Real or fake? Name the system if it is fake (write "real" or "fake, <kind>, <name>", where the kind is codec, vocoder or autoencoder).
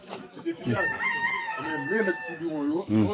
fake, autoencoder, DAC-VAE